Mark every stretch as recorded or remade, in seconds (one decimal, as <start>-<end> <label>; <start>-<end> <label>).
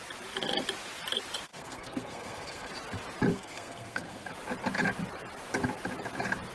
0.0-1.5 recorded; 1.5-2.7 remade; 2.7-3.3 recorded; 3.3-4.3 remade; 4.3-6.5 recorded